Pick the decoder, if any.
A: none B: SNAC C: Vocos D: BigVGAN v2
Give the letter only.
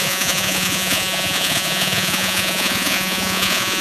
C